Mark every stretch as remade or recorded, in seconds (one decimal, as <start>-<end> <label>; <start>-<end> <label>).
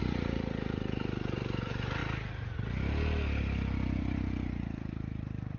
0.0-2.0 remade; 2.0-3.4 recorded; 3.4-5.6 remade